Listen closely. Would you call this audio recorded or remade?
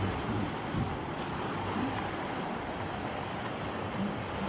recorded